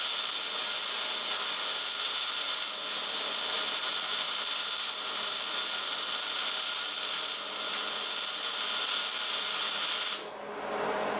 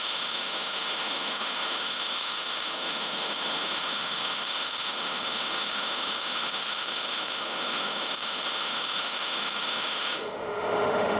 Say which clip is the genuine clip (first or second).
first